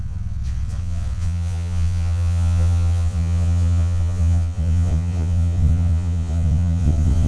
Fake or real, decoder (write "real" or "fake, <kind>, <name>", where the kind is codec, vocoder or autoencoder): fake, vocoder, Vocos